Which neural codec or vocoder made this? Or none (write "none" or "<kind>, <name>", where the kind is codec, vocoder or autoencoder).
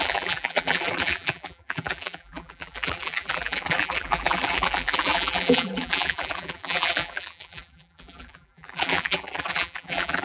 vocoder, BigVGAN v2